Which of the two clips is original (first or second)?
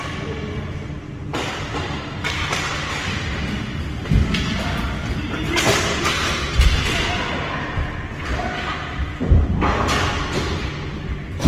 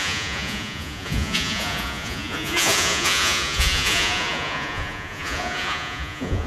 first